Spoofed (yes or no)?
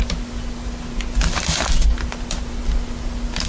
no